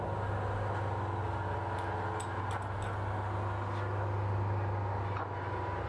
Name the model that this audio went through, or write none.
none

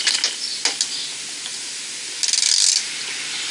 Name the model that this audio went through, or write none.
none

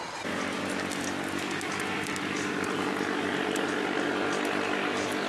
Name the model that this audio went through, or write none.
none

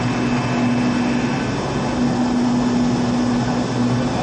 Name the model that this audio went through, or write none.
none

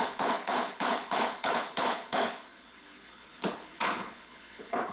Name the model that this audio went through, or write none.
codec, HILCodec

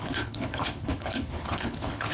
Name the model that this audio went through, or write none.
codec, HILCodec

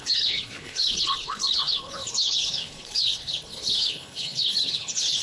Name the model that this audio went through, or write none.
codec, HILCodec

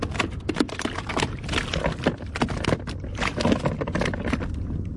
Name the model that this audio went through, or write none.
none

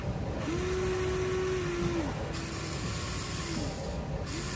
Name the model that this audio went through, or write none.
none